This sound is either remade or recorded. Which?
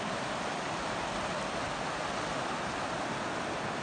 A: recorded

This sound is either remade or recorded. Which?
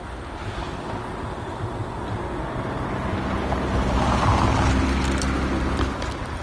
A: recorded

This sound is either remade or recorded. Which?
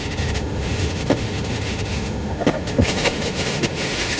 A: remade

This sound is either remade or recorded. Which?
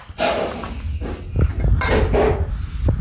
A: recorded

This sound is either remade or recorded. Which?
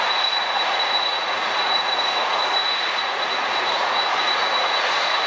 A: remade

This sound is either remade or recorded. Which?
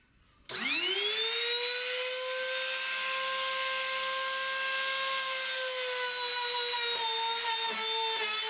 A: recorded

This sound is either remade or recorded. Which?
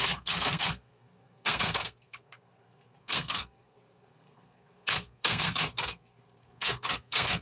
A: remade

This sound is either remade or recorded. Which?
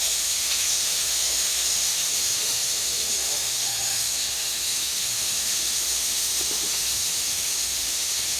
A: remade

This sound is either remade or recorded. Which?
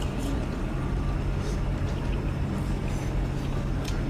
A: recorded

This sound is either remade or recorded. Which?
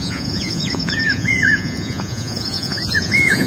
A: remade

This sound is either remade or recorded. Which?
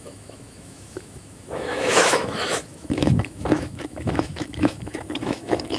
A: remade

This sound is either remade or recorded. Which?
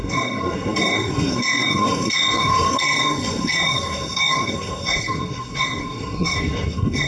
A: remade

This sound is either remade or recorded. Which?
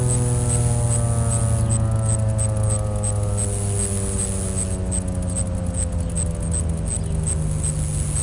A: recorded